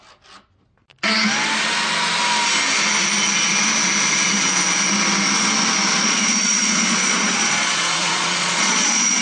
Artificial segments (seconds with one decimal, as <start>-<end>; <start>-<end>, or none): 5.9-9.2